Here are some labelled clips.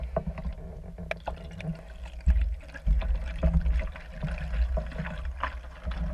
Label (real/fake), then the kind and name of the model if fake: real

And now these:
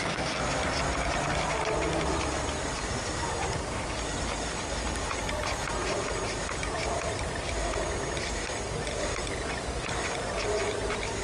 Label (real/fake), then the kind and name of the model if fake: real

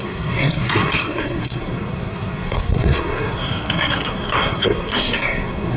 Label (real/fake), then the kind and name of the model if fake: fake, codec, SNAC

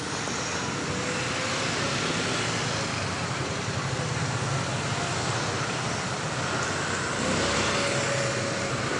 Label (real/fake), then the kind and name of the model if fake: real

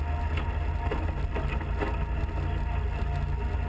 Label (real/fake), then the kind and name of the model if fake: real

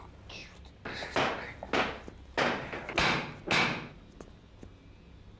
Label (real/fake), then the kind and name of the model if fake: real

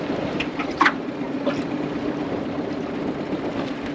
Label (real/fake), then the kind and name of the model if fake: real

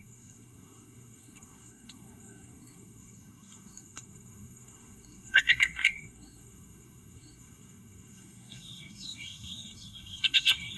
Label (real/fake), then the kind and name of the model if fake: fake, codec, SNAC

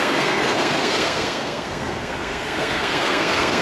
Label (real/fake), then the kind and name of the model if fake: fake, codec, SNAC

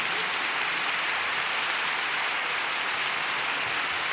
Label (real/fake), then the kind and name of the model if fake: real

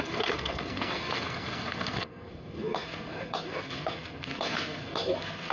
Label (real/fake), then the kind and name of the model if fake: fake, codec, SNAC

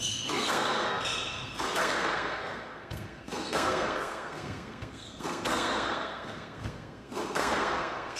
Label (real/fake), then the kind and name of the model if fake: fake, codec, SNAC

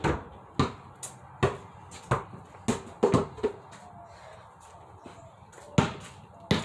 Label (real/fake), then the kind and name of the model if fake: real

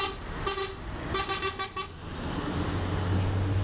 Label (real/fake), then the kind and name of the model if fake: real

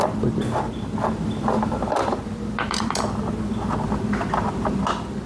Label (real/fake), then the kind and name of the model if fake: real